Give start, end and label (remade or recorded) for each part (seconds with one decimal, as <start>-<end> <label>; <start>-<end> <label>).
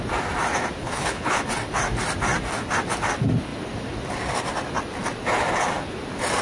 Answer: 0.0-0.8 recorded; 0.8-1.4 remade; 1.4-6.4 recorded